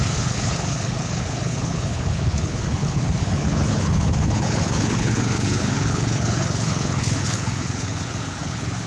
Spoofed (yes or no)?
yes